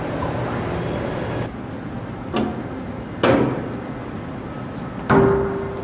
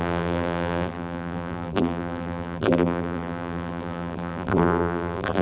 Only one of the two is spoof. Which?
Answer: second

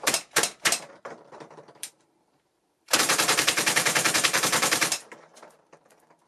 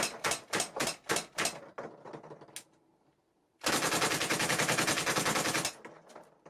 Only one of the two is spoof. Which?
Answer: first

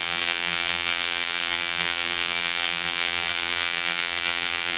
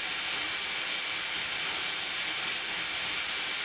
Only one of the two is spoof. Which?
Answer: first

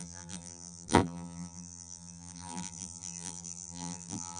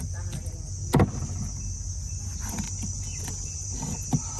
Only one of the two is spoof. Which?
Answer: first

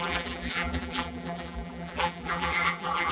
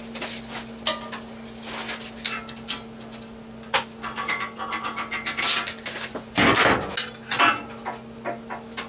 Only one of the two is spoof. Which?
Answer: first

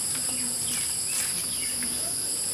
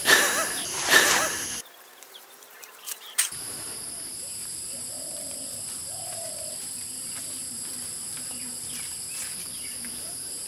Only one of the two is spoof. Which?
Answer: second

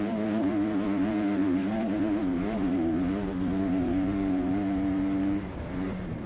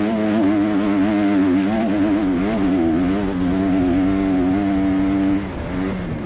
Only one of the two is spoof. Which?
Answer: first